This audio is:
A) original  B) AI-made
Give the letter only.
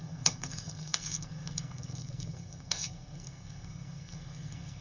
B